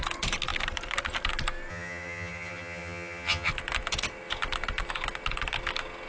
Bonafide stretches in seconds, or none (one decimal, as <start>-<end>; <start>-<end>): 0.0-1.7; 3.5-6.1

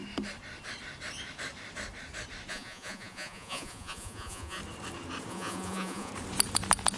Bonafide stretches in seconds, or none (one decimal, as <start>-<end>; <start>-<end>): 0.0-2.5; 4.6-5.3; 6.1-7.0